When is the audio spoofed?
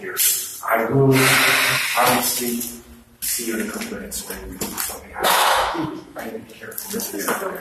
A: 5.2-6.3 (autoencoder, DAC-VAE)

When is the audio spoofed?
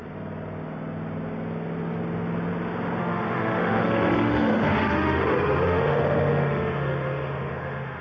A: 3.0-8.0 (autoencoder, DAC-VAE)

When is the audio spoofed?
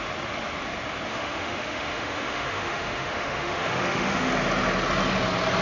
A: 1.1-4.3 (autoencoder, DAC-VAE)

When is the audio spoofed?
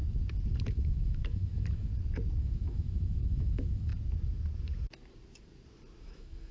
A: 0.7-1.9 (autoencoder, DAC-VAE); 2.4-3.9; 6.0-6.5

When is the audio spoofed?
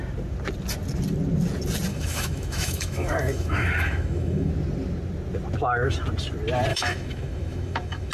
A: 1.9-4.5 (autoencoder, DAC-VAE); 6.7-8.1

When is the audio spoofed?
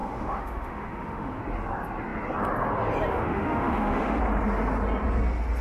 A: 0.0-1.4 (autoencoder, DAC-VAE); 3.1-4.2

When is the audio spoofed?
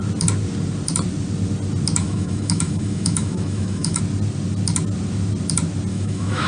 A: 2.0-4.0 (autoencoder, DAC-VAE); 5.9-6.5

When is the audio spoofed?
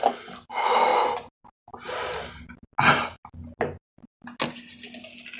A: none